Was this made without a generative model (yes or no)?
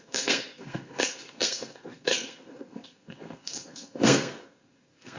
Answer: no